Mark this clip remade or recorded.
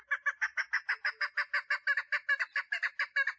recorded